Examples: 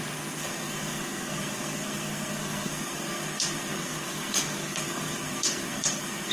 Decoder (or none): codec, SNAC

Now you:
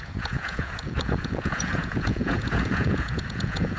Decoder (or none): vocoder, Vocos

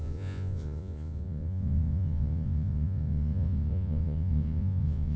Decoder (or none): vocoder, Vocos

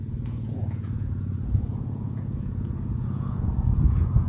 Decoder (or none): vocoder, Vocos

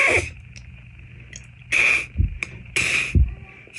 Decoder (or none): none